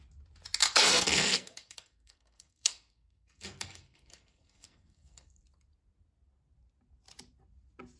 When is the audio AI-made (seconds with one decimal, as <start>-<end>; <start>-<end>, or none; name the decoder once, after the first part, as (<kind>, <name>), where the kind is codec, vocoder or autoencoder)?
0.6-5.4 (codec, SNAC)